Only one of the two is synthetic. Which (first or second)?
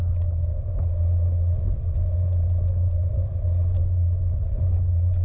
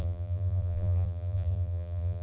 second